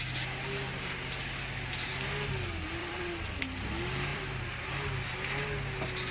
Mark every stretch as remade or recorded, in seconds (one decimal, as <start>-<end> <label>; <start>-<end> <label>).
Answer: 0.0-2.8 recorded; 2.8-3.4 remade; 3.4-4.1 recorded; 4.1-4.7 remade; 4.7-6.1 recorded